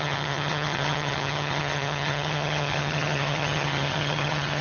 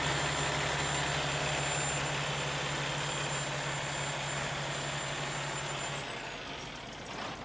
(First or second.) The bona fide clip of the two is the second